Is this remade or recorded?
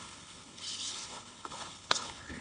remade